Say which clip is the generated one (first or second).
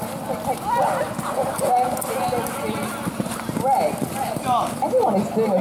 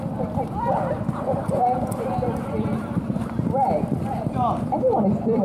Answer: second